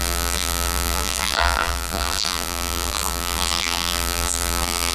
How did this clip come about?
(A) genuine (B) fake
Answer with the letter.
B